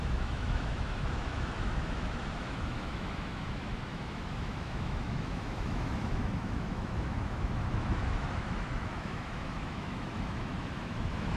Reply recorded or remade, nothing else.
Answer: remade